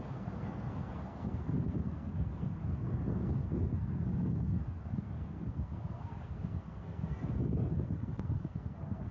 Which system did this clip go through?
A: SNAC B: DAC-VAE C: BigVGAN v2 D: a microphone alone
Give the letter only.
A